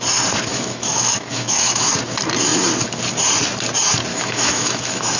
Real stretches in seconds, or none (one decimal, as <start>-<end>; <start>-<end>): 0.0-0.5; 1.9-4.1